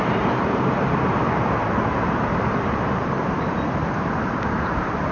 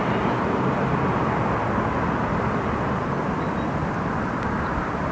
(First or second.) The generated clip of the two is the first